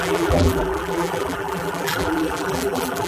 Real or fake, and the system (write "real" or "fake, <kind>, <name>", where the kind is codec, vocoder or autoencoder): fake, vocoder, BigVGAN v2